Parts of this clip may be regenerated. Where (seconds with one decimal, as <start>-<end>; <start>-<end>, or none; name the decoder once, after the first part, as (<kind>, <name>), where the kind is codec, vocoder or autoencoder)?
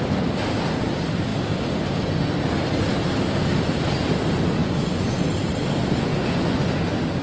4.6-5.2 (vocoder, Vocos); 6.1-6.7